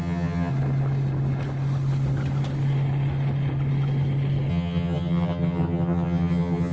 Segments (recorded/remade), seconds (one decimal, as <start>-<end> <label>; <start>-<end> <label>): 0.0-0.5 remade; 0.5-4.5 recorded; 4.5-6.7 remade